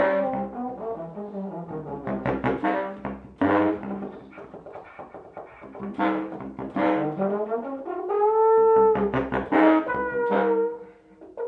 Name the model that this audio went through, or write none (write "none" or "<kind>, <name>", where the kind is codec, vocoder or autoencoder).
none